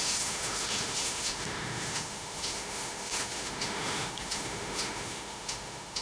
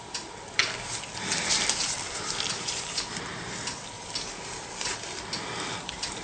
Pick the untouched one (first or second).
second